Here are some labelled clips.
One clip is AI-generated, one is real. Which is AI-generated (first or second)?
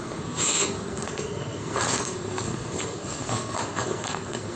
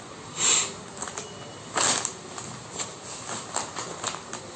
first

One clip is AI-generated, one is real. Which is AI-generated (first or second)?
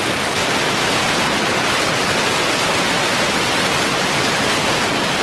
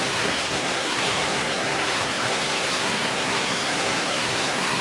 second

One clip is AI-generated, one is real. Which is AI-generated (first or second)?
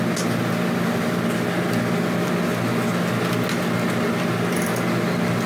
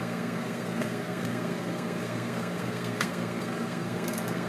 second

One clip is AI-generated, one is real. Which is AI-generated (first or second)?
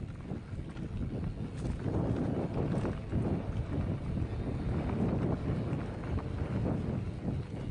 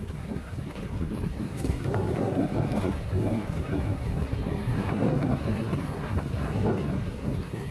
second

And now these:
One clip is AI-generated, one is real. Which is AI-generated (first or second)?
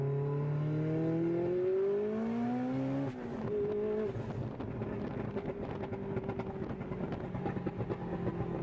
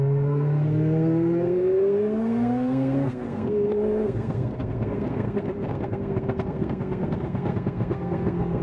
second